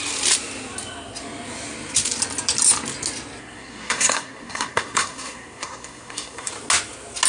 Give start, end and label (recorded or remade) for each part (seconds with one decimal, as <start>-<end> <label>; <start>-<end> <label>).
0.0-3.4 recorded; 3.4-6.5 remade; 6.5-7.3 recorded